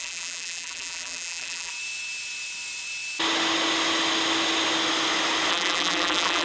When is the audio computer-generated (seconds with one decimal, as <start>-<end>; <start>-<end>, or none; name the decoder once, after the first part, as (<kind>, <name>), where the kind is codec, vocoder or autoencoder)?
0.0-1.7 (vocoder, BigVGAN v2); 5.5-6.4